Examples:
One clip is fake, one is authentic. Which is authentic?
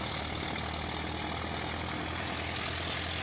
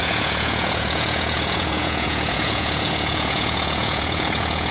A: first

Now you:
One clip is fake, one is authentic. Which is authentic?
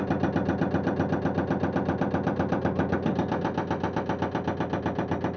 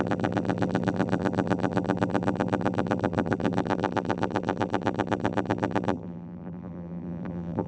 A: first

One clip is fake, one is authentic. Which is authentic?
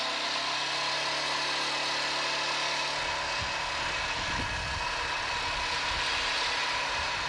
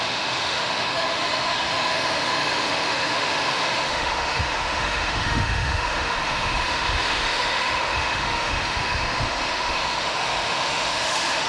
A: first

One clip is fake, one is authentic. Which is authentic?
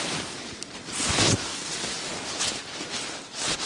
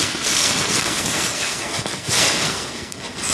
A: first